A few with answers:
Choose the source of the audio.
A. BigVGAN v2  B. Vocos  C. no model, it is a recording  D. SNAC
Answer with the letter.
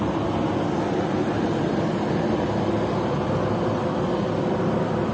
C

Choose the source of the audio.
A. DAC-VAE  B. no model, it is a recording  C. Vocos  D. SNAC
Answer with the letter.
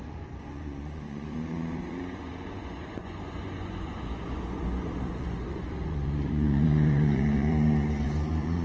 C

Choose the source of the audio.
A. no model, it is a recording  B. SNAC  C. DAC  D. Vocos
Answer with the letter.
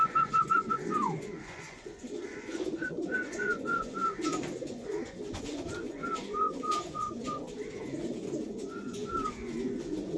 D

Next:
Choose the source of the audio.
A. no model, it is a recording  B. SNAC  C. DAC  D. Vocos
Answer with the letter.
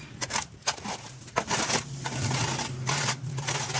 A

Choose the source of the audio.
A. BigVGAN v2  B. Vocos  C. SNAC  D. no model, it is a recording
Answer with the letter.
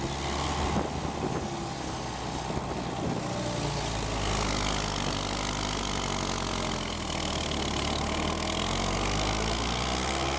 D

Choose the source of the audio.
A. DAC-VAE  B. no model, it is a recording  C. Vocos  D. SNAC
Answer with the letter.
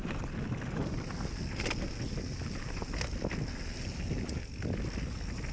B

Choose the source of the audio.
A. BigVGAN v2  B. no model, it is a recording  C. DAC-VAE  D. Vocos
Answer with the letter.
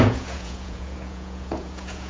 D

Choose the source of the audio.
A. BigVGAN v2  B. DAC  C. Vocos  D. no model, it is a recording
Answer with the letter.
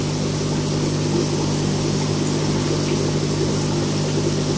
D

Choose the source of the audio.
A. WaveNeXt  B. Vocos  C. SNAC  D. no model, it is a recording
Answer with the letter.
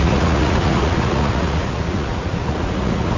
B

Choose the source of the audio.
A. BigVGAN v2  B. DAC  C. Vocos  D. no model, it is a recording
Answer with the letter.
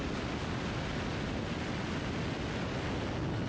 D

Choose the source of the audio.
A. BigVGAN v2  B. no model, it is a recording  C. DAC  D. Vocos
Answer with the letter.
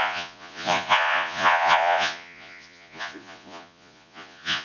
D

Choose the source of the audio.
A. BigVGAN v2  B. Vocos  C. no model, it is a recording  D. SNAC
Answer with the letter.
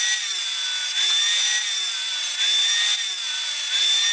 C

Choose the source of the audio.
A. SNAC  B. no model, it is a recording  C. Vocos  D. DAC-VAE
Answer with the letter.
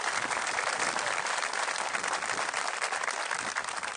B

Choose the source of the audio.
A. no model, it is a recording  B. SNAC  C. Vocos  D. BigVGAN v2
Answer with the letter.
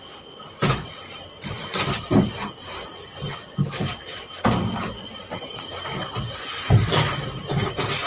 A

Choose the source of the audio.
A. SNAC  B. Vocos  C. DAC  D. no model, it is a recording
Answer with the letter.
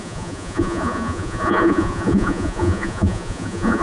B